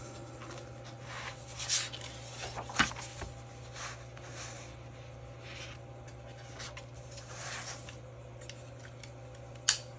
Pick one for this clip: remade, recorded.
recorded